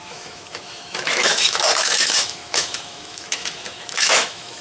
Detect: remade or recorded remade